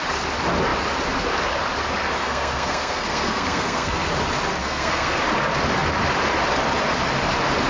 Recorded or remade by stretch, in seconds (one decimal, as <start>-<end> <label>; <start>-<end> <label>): 0.0-2.2 recorded; 2.2-4.1 remade; 4.1-4.6 recorded; 4.6-5.2 remade; 5.2-7.7 recorded